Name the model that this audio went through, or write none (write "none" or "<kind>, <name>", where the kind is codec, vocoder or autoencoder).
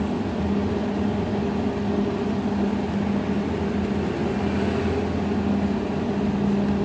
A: none